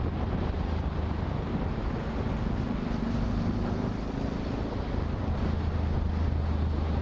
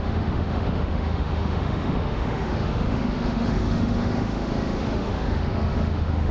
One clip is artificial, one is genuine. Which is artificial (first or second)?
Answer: second